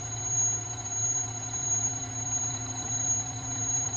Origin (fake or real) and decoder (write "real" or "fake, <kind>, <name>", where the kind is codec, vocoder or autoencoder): fake, vocoder, BigVGAN v2